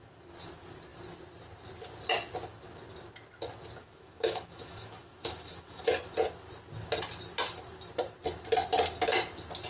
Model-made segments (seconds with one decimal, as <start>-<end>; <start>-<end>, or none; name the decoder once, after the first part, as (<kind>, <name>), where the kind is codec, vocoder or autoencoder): 3.8-5.8 (autoencoder, DAC-VAE)